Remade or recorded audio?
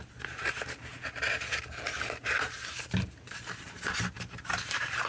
remade